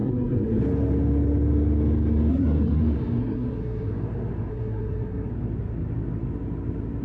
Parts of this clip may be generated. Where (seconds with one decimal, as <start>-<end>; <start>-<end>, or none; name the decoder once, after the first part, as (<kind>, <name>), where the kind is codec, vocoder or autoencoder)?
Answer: 0.0-0.6 (codec, SNAC); 2.3-2.8; 3.2-3.9; 4.5-5.3